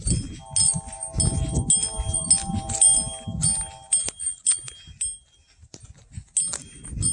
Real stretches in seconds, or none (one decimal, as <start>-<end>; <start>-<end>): 0.0-7.1